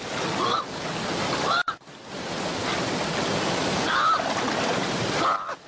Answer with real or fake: real